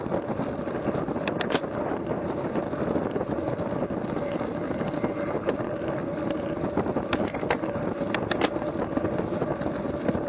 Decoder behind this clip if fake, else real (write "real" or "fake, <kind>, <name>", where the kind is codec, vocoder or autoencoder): real